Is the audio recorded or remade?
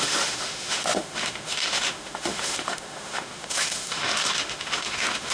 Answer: remade